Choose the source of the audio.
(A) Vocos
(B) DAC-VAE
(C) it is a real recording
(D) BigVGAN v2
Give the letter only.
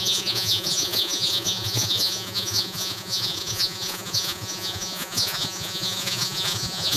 A